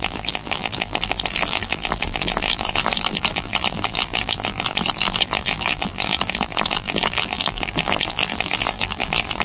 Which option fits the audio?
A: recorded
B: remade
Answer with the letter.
B